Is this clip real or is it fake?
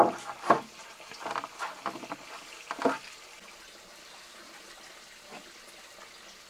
real